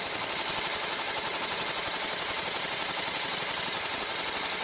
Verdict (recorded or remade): recorded